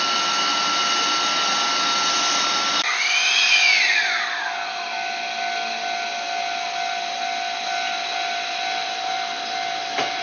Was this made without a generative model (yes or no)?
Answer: yes